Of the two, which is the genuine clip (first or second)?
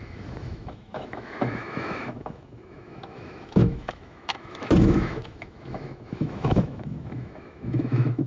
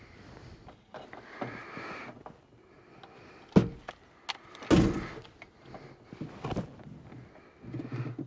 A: second